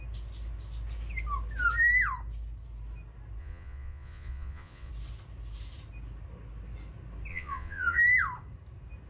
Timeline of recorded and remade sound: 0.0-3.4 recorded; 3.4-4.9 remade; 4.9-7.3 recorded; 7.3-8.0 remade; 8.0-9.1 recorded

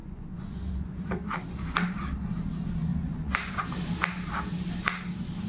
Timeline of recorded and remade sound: 0.0-1.0 remade; 1.0-2.9 recorded; 2.9-3.7 remade; 3.7-5.5 recorded

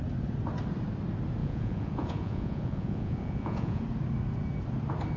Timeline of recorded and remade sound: 0.0-1.4 recorded; 1.4-3.8 remade; 3.8-5.2 recorded